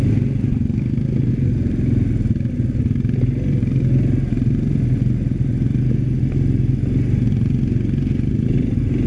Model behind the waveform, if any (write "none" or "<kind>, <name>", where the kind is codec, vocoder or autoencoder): none